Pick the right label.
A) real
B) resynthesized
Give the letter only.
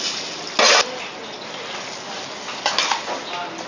A